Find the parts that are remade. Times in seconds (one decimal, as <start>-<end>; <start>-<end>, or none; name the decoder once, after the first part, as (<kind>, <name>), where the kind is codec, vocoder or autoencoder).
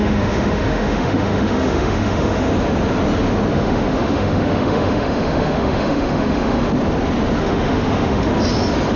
0.0-2.5 (autoencoder, DAC-VAE); 3.5-6.6; 7.4-8.3